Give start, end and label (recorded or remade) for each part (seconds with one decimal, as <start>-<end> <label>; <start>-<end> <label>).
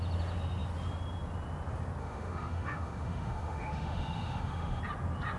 0.0-2.0 recorded; 2.0-4.8 remade; 4.8-5.4 recorded